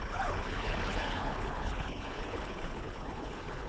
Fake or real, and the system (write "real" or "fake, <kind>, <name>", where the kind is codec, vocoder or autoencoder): fake, codec, HILCodec